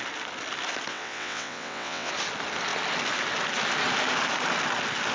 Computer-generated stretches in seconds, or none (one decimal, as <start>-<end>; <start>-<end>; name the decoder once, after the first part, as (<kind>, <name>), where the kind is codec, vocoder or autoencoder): 0.9-2.1 (vocoder, WaveNeXt)